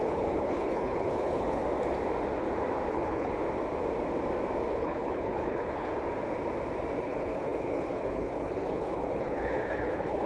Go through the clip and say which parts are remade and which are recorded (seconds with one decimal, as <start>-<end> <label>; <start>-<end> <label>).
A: 0.0-1.6 remade; 1.6-2.9 recorded; 2.9-3.3 remade; 3.3-4.7 recorded; 4.7-5.9 remade; 5.9-7.0 recorded; 7.0-10.3 remade